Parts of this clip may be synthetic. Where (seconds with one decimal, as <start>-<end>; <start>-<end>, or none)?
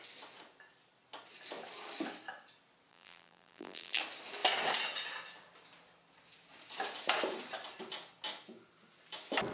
2.9-4.0